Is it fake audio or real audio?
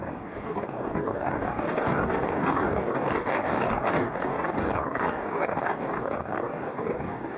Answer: fake